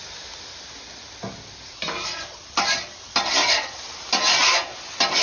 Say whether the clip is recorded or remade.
recorded